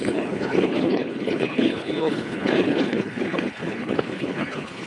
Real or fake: fake